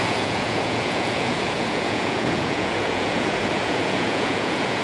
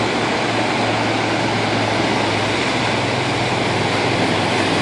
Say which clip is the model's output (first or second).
first